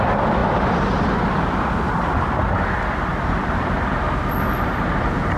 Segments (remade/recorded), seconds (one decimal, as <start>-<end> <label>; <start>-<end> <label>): 0.0-5.4 recorded